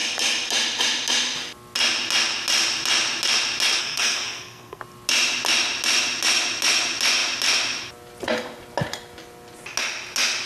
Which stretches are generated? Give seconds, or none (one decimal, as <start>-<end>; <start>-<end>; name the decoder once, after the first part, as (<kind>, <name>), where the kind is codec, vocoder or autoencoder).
3.8-4.8 (codec, SNAC)